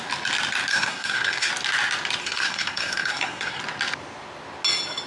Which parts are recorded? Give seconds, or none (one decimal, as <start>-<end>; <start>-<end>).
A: 0.0-0.7; 1.5-2.2; 3.6-5.1